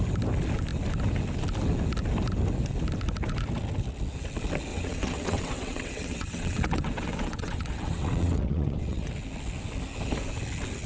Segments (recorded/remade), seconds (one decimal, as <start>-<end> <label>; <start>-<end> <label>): 0.0-4.7 recorded; 4.7-9.1 remade; 9.1-10.9 recorded